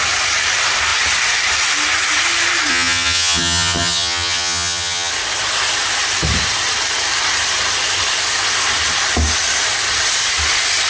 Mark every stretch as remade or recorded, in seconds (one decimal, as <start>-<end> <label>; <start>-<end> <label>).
0.0-2.7 recorded; 2.7-5.1 remade; 5.1-10.9 recorded